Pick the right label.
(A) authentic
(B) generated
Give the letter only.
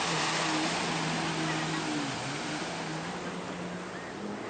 A